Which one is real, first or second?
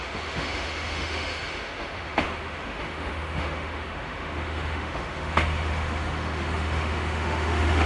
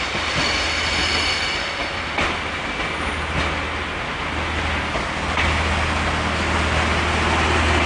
second